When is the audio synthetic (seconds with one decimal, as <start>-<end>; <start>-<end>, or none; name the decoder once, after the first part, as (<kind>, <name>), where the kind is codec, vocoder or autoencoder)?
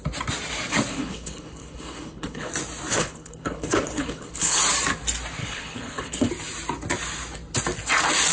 0.9-2.5 (codec, HILCodec); 2.9-4.6; 5.4-6.3